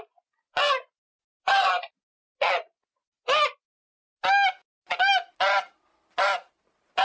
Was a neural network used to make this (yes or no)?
no